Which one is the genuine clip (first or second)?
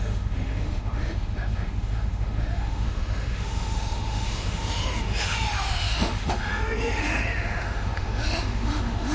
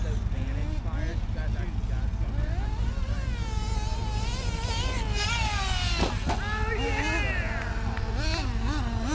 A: second